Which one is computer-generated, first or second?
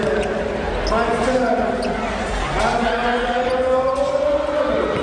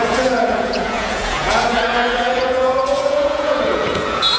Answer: second